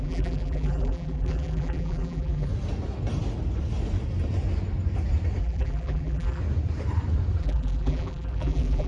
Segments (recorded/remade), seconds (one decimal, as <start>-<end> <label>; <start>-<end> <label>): 0.0-2.5 remade; 2.5-5.4 recorded; 5.4-6.4 remade; 6.4-7.4 recorded; 7.4-8.9 remade